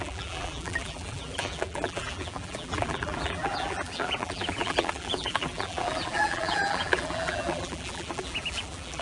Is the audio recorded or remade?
remade